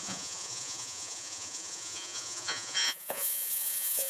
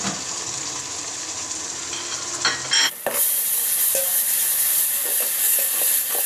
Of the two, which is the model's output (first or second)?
first